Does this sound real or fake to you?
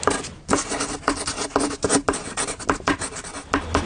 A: real